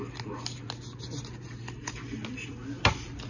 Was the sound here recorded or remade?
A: recorded